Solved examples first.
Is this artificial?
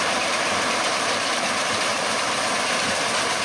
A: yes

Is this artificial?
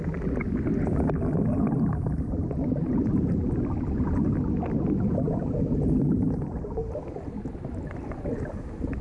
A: no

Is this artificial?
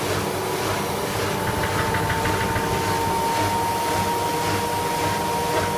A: no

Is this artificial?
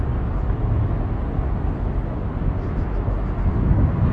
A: no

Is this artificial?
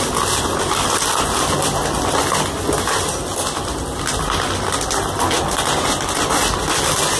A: no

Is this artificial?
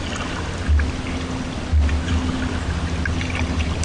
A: no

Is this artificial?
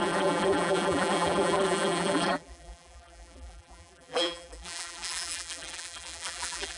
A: yes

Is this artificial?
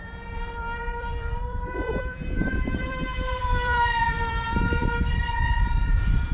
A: yes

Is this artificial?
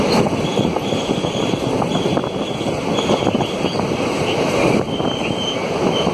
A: no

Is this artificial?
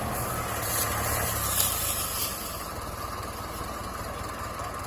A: no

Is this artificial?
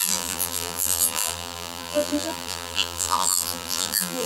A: yes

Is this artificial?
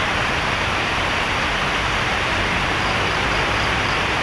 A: yes